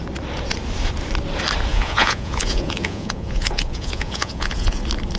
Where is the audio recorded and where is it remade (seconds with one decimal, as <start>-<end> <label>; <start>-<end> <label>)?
0.0-1.7 recorded; 1.7-4.8 remade; 4.8-5.2 recorded